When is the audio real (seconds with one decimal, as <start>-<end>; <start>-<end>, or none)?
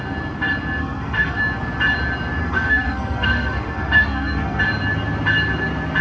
0.0-0.8; 1.4-2.4; 4.6-6.0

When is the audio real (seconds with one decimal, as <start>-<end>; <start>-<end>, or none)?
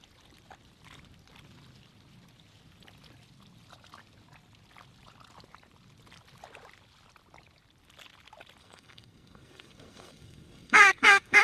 0.0-8.6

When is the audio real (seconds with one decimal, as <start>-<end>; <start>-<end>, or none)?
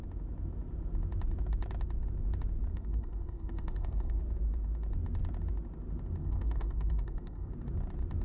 0.0-2.7; 4.2-6.2; 7.5-8.2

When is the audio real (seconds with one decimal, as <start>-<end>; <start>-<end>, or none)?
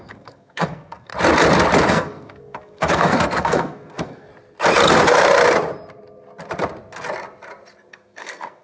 1.1-1.9; 4.3-7.9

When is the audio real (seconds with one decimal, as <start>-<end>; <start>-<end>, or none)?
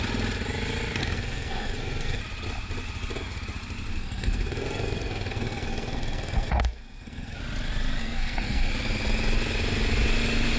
0.0-1.0; 2.2-3.9; 7.4-8.0; 8.7-10.6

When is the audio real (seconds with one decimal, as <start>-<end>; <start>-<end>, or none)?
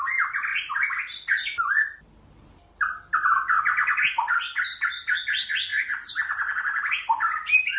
0.0-7.8